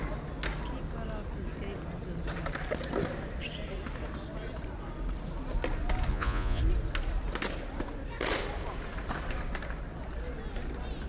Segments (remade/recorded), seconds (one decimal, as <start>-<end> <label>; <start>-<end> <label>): 0.0-6.1 recorded; 6.1-6.6 remade; 6.6-11.1 recorded